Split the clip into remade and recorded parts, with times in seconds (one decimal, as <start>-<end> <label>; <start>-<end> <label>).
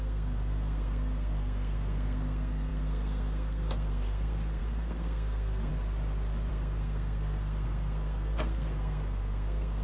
0.0-5.7 remade; 5.7-6.5 recorded; 6.5-9.8 remade